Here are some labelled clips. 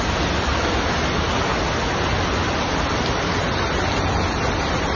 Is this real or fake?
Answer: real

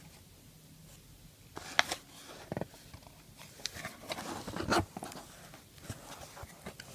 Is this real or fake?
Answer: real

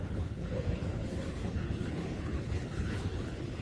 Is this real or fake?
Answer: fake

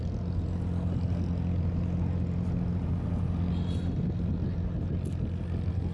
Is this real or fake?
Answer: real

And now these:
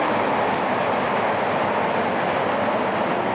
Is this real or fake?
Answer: real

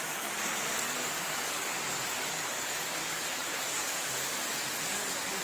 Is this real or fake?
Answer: fake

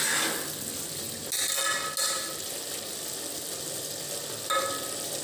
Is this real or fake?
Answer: real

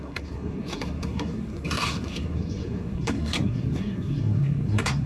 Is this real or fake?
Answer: fake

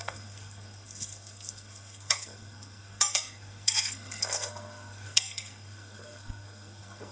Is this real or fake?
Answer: fake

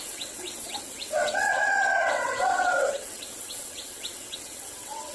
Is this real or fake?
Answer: fake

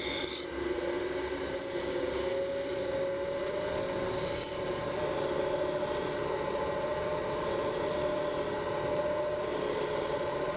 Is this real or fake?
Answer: real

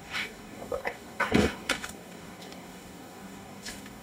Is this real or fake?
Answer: fake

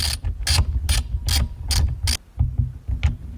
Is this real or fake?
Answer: real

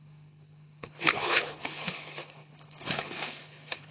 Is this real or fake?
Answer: fake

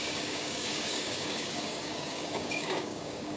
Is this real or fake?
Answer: fake